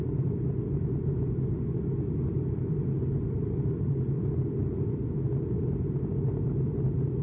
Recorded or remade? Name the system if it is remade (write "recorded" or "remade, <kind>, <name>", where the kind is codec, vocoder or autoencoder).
recorded